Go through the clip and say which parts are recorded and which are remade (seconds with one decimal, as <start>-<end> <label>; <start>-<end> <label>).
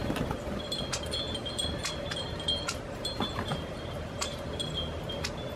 0.0-5.6 recorded